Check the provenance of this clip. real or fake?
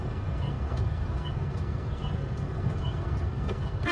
fake